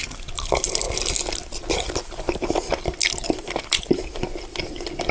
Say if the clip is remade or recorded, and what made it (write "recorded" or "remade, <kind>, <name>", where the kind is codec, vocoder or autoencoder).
recorded